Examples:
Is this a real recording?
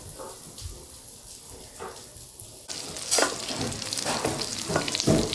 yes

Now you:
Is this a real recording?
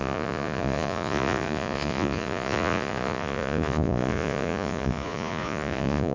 no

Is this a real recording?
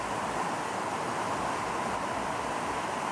yes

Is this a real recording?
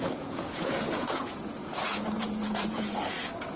no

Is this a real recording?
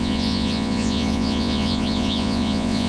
no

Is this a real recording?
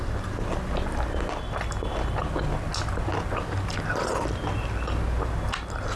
yes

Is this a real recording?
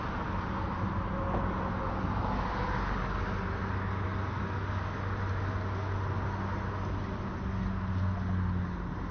yes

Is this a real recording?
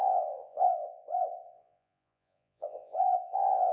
no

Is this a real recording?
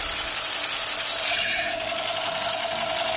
yes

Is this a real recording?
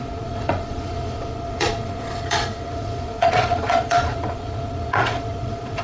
no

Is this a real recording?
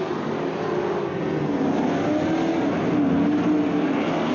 yes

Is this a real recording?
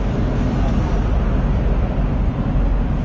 yes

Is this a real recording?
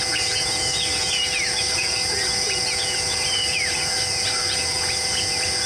no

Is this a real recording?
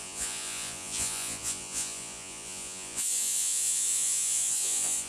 no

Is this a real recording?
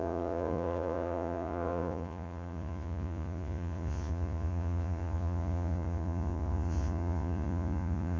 no